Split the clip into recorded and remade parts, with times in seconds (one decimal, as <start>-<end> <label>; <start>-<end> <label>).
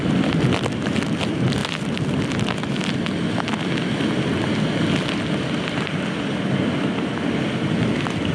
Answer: 0.0-8.3 recorded